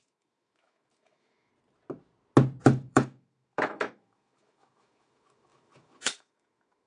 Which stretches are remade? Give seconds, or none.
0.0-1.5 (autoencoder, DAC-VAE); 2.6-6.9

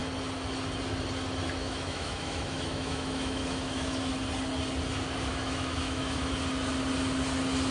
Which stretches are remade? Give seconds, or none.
1.6-4.1 (autoencoder, DAC-VAE); 5.3-6.3

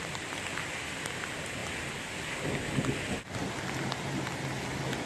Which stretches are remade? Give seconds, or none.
none

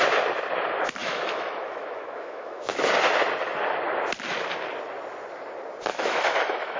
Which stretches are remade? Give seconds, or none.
1.0-2.8 (autoencoder, DAC-VAE); 5.9-6.8